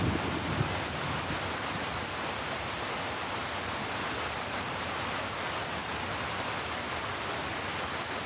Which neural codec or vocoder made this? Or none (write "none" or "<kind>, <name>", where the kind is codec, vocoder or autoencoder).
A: none